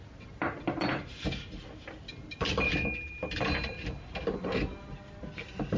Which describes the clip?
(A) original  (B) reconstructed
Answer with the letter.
A